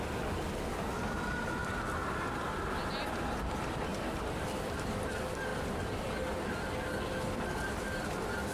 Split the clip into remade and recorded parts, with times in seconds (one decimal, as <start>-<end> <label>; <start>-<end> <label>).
0.0-8.5 recorded